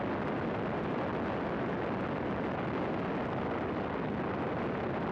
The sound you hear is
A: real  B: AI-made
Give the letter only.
A